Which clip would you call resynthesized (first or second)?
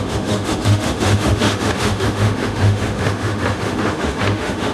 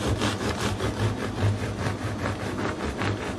first